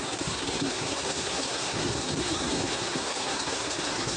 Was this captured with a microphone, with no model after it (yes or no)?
no